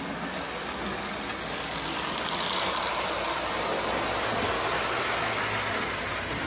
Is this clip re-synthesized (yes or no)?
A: no